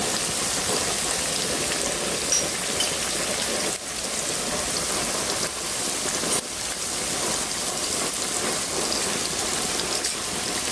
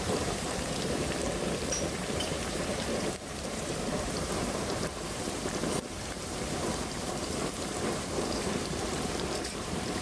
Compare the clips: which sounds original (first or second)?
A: first